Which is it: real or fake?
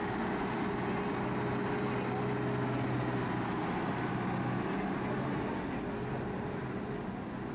real